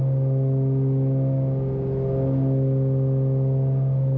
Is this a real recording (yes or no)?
yes